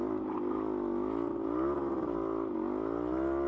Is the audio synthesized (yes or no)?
no